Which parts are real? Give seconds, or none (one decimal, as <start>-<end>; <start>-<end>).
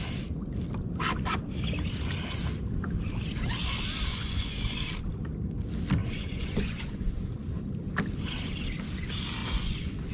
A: 0.0-4.1; 4.8-6.0; 7.1-9.4